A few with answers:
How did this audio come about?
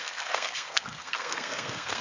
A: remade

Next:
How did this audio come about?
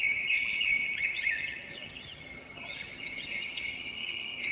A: remade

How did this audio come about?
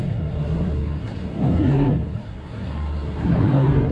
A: remade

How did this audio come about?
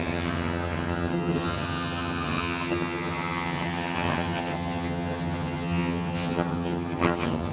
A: remade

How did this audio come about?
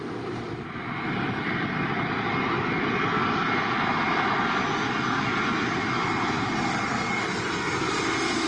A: recorded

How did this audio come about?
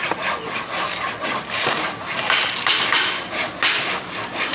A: recorded